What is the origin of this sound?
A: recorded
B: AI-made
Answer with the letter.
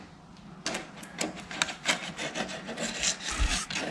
A